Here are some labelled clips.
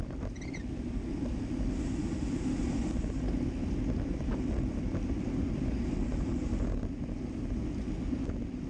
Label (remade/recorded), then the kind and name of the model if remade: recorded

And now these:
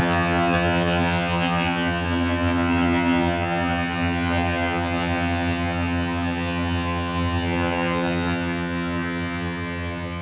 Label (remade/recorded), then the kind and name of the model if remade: remade, vocoder, HiFi-GAN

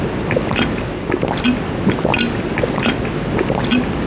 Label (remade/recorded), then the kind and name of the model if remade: recorded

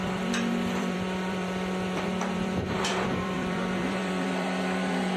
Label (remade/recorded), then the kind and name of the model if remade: remade, vocoder, BigVGAN v2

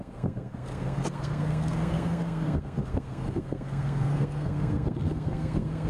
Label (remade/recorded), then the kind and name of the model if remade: remade, codec, SNAC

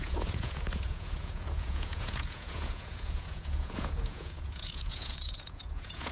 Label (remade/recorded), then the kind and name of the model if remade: remade, vocoder, Vocos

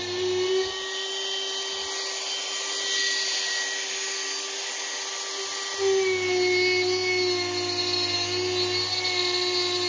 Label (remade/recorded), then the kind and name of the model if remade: recorded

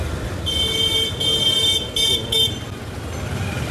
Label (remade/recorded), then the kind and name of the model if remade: recorded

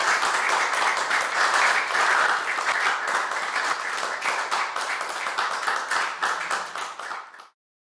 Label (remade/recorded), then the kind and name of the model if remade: recorded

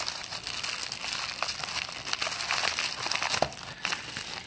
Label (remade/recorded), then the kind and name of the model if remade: recorded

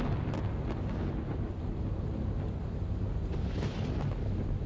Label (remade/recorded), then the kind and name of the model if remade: recorded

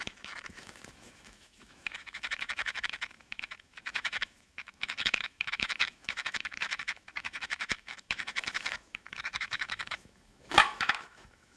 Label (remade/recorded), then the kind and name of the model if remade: remade, autoencoder, DAC-VAE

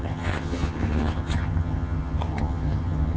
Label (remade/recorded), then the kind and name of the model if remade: remade, vocoder, HiFi-GAN